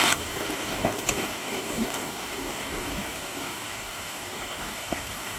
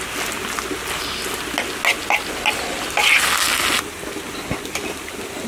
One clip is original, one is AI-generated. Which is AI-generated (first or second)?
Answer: first